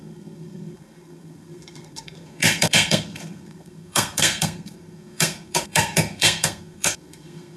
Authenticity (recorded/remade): remade